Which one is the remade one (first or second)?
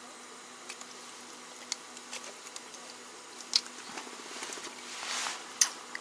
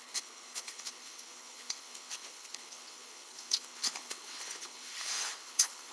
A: second